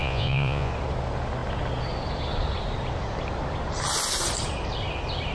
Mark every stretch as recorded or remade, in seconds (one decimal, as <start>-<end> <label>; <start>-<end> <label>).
0.0-0.7 remade; 0.7-5.3 recorded